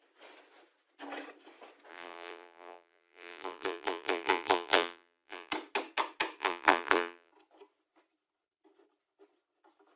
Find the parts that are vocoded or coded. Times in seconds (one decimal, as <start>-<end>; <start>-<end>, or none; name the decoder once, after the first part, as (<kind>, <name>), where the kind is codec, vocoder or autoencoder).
1.9-5.5 (vocoder, BigVGAN v2); 6.4-7.3